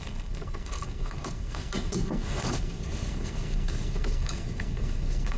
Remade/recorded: remade